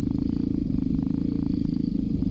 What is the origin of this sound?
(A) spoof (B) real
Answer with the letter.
A